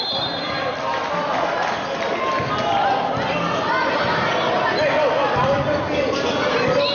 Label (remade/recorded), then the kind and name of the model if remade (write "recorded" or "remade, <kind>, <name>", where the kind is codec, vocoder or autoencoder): recorded